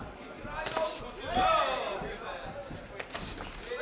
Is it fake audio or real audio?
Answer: real